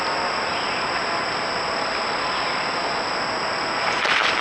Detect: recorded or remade recorded